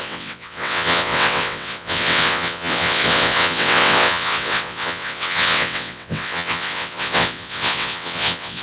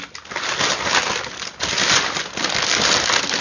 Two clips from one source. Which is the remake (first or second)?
first